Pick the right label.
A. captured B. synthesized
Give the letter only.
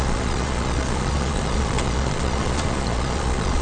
B